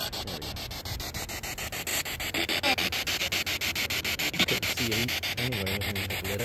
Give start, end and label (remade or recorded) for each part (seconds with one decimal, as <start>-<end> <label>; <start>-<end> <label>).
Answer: 0.0-5.0 recorded; 5.0-6.4 remade